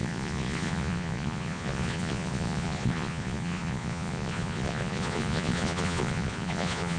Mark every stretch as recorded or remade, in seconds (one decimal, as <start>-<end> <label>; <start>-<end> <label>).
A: 0.0-7.0 remade